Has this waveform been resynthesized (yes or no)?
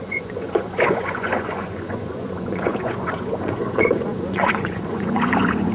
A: yes